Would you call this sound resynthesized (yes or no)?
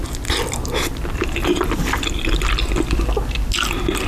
no